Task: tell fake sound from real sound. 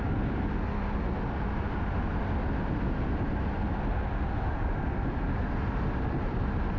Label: real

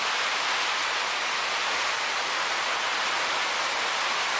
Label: real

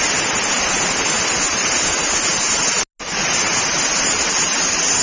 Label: real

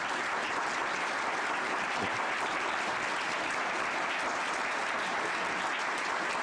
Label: real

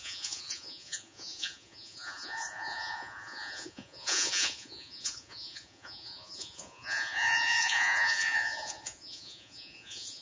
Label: fake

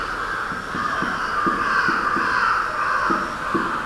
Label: real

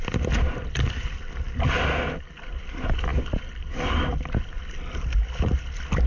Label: real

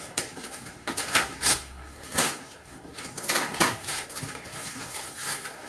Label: fake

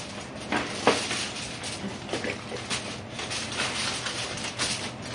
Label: real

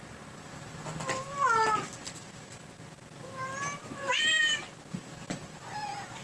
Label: real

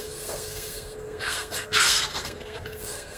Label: fake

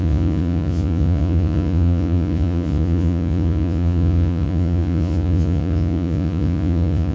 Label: fake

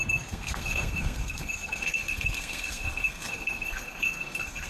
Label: fake